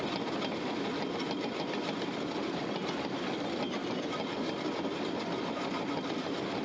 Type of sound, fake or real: real